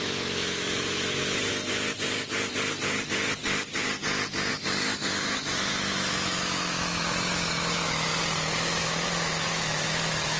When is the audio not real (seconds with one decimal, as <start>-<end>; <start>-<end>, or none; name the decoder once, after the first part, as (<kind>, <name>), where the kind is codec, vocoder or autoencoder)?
0.0-1.5 (autoencoder, DAC-VAE); 4.5-8.1; 8.8-10.4